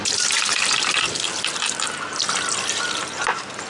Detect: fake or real real